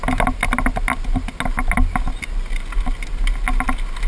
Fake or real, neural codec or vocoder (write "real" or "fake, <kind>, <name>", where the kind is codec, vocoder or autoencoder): real